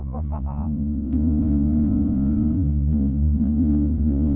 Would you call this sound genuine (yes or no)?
no